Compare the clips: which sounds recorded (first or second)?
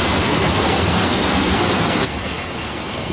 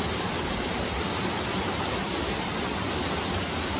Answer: second